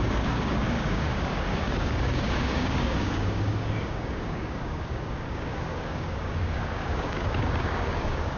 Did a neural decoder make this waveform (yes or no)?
yes